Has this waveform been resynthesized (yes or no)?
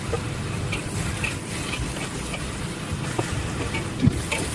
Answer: yes